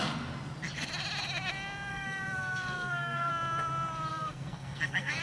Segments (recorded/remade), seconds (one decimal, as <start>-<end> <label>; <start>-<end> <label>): 0.0-1.9 recorded; 1.9-3.3 remade; 3.3-4.1 recorded; 4.1-5.2 remade